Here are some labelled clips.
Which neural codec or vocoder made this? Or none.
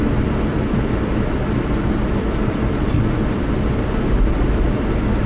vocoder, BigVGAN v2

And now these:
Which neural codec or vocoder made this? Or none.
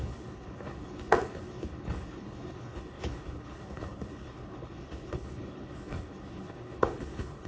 codec, HILCodec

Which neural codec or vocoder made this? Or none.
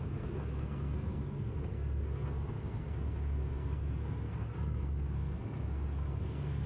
codec, SNAC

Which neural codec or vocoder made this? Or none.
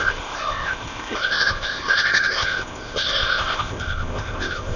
codec, ZipCodec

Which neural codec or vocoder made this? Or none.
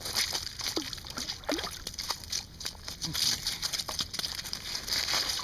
none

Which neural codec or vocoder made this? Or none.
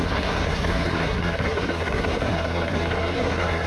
codec, SNAC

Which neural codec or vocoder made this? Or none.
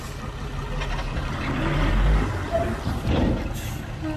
none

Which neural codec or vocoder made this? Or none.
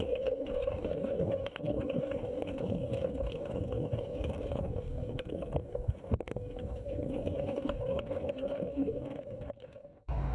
codec, DAC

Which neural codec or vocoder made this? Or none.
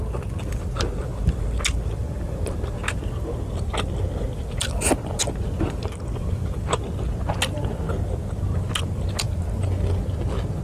none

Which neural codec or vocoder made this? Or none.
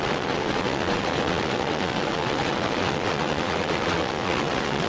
vocoder, WaveNeXt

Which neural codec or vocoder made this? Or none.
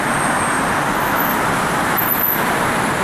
none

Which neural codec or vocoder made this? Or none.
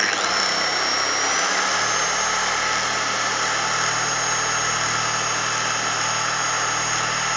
none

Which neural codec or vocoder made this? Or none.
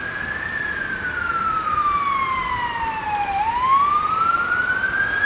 none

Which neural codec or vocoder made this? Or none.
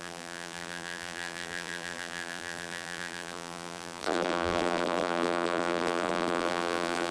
vocoder, BigVGAN v2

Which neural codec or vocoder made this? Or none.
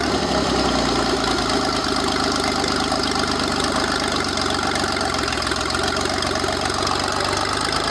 none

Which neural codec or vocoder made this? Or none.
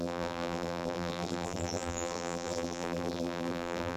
vocoder, BigVGAN v2